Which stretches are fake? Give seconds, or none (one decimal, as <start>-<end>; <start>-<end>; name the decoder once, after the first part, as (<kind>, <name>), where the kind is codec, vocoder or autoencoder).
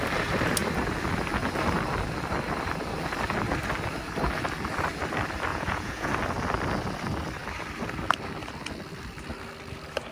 5.5-6.1 (vocoder, Vocos)